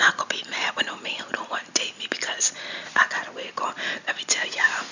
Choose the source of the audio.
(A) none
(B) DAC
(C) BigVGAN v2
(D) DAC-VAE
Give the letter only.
A